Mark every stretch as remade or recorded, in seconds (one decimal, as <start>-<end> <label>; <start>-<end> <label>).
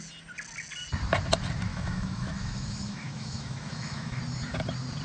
0.0-1.7 recorded; 1.7-4.2 remade; 4.2-5.0 recorded